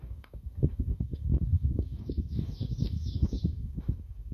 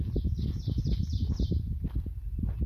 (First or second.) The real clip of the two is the second